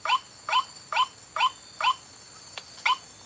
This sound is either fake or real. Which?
real